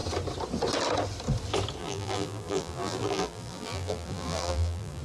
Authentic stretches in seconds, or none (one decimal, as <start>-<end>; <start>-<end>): 0.0-1.8